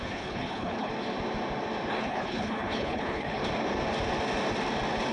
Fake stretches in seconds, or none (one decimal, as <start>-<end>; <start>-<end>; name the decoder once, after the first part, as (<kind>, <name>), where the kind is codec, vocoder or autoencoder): 0.0-0.9 (codec, HILCodec); 1.9-3.4